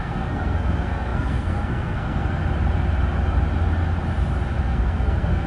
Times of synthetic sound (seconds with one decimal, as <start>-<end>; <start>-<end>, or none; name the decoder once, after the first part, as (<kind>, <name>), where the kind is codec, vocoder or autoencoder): 0.0-2.4 (codec, SNAC); 4.6-5.5